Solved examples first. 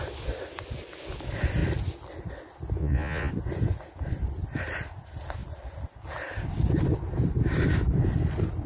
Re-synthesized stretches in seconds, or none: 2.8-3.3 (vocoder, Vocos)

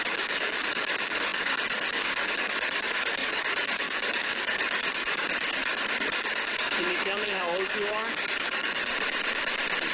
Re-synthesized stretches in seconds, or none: 0.0-8.9 (codec, DAC)